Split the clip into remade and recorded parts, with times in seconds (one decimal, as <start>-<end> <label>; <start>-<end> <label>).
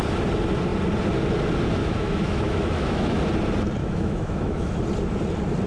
0.0-1.8 recorded; 1.8-3.2 remade; 3.2-3.8 recorded; 3.8-4.8 remade; 4.8-5.7 recorded